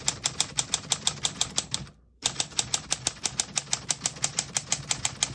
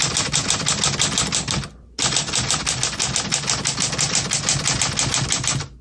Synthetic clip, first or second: first